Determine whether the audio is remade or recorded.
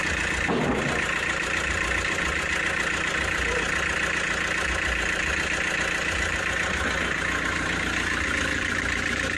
recorded